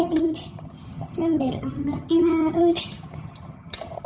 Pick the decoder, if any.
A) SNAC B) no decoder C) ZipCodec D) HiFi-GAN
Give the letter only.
D